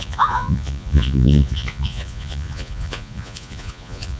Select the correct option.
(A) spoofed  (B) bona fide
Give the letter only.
A